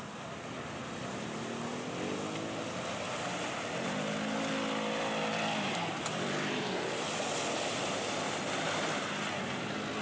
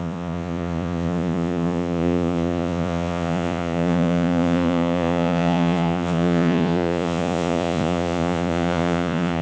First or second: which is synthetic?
second